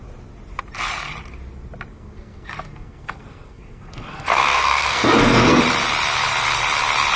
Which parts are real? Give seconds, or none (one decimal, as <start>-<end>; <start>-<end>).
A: 0.0-1.9; 5.6-7.2